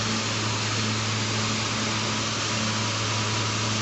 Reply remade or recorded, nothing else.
recorded